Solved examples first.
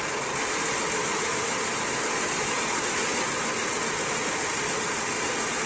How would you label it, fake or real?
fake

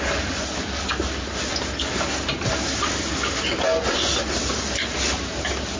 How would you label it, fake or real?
real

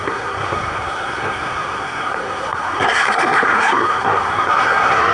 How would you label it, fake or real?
fake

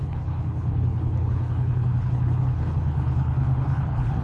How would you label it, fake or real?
fake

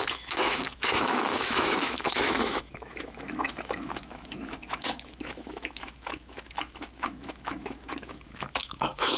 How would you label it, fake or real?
fake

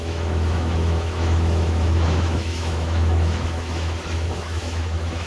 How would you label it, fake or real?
fake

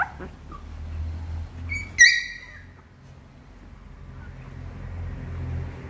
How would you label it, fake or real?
real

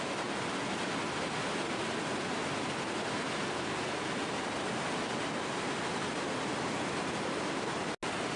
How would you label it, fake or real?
real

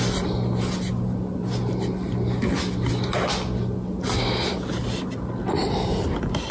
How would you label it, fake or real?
real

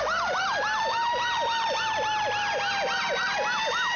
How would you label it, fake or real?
real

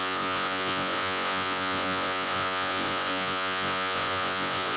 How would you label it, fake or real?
fake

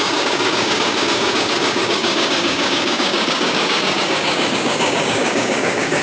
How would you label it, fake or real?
fake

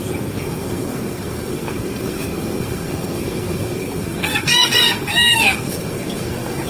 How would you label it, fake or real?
fake